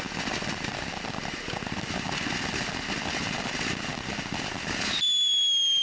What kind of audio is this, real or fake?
real